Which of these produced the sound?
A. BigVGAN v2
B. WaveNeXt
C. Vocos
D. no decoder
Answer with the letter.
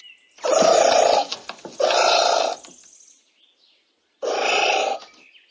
D